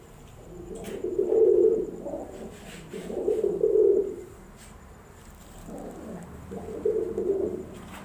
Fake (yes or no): yes